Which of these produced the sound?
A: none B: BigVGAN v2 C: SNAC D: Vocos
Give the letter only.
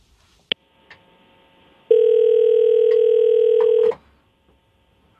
A